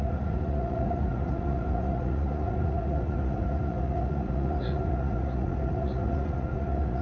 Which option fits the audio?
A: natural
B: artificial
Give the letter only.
B